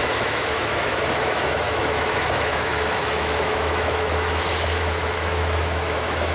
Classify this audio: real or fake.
fake